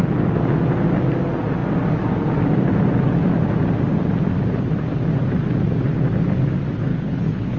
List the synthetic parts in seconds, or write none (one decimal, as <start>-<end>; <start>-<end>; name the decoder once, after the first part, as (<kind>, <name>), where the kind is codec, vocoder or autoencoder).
6.9-7.6 (codec, HILCodec)

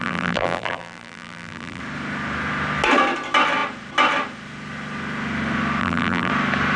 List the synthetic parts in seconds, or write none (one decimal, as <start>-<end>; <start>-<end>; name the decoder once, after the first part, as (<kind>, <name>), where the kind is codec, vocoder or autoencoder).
0.0-1.8 (vocoder, BigVGAN v2); 5.8-6.3

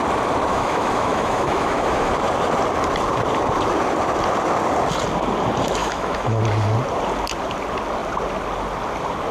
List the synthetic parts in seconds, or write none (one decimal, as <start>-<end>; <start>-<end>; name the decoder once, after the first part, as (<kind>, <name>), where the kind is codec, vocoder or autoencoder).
0.5-2.1 (autoencoder, DAC-VAE); 5.8-6.4

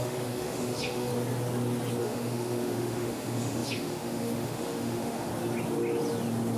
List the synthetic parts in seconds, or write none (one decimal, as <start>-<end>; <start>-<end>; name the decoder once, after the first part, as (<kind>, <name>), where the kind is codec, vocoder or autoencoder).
0.0-1.1 (autoencoder, DAC-VAE); 2.0-5.3

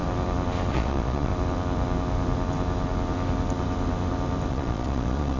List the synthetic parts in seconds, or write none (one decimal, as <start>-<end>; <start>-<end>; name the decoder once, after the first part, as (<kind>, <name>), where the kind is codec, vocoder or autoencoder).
0.7-1.3 (vocoder, Vocos); 4.5-5.4

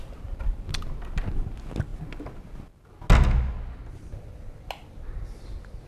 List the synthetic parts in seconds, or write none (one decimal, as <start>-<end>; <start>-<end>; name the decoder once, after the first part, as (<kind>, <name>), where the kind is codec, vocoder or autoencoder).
none